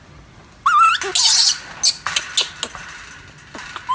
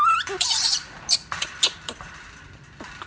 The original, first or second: first